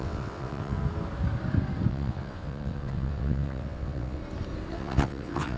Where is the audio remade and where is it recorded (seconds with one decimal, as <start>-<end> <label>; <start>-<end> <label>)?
0.0-0.8 remade; 0.8-1.9 recorded; 1.9-4.2 remade; 4.2-4.7 recorded; 4.7-5.6 remade